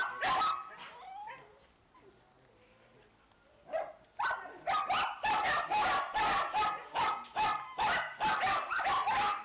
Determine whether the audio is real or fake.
real